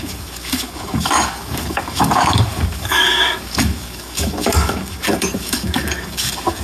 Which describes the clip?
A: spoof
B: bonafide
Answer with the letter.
A